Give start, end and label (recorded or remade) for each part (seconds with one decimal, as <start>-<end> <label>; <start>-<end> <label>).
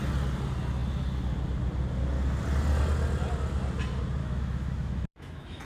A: 0.0-4.2 recorded; 4.2-5.6 remade